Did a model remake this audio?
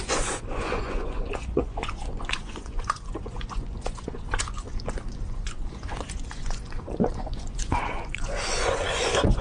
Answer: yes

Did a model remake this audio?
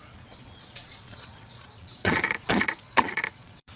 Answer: yes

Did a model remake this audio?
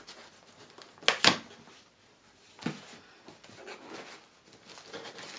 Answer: no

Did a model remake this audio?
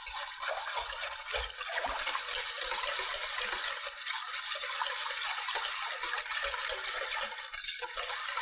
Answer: no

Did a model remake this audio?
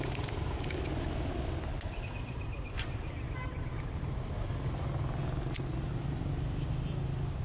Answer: no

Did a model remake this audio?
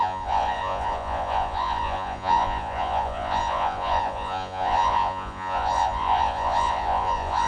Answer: yes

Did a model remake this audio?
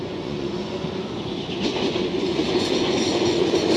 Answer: yes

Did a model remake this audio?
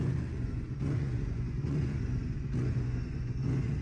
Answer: yes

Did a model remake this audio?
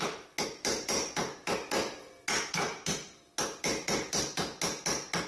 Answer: no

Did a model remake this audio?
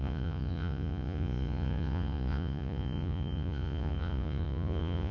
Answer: yes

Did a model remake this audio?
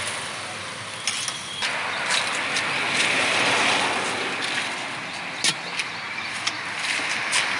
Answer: no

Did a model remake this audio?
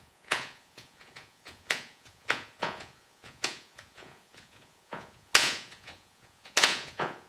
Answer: yes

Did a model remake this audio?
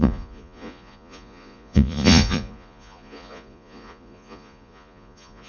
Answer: yes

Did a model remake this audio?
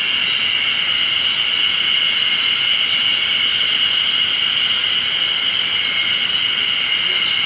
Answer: no